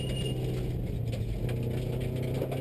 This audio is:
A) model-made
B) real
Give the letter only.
B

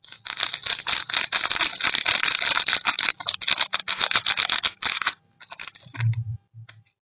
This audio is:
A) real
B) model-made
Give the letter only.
A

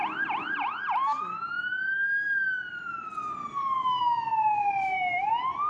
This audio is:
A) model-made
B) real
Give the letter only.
B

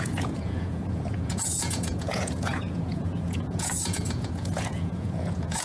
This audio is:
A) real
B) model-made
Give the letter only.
B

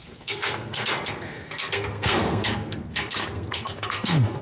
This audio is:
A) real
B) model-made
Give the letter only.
B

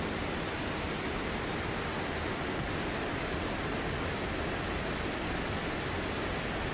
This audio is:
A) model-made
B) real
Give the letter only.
B